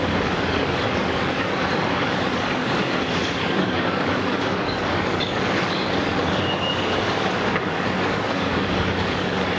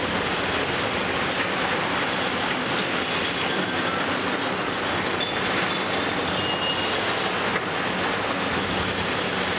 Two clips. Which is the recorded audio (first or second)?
second